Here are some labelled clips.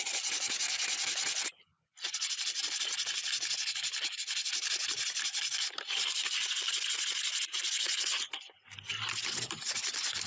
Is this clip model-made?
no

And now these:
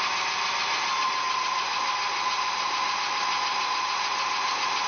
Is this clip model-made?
no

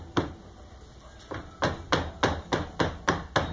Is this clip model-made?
no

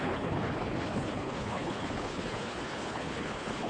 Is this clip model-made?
yes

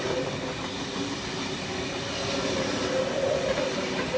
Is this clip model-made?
no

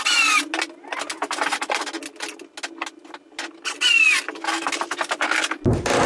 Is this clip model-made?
no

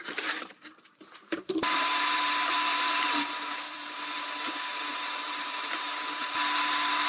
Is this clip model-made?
yes